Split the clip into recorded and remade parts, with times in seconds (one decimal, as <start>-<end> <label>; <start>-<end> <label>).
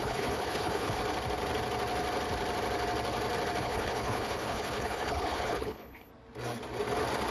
0.0-1.0 remade; 1.0-3.6 recorded; 3.6-6.1 remade; 6.1-7.3 recorded